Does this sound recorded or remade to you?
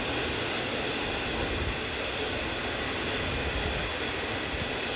recorded